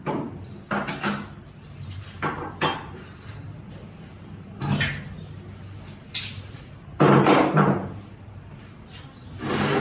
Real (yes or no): yes